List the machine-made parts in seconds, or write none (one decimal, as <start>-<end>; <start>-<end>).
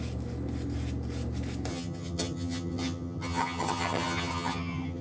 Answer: 1.7-5.0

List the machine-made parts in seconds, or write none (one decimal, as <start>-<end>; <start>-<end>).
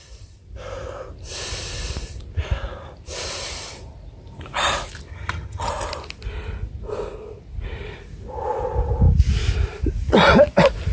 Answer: 5.1-5.7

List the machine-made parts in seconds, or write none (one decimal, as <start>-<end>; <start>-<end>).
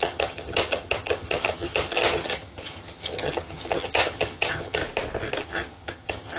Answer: 0.0-4.8; 5.4-6.4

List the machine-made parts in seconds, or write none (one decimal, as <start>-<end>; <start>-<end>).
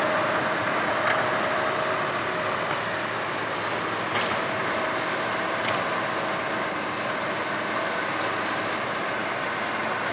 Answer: none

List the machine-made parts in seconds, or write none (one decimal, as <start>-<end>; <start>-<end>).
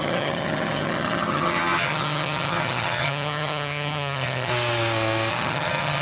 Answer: 0.0-4.5; 5.3-6.0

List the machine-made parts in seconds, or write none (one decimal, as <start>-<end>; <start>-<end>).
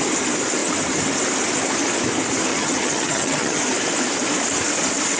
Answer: 2.5-3.6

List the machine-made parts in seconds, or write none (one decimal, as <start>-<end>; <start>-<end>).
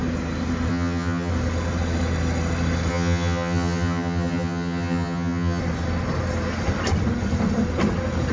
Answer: 0.7-1.3; 2.9-5.6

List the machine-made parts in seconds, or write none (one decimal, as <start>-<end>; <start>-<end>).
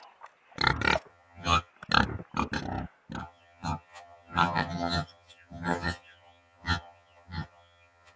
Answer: 1.1-1.7; 3.2-8.2